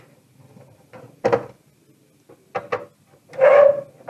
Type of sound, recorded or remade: recorded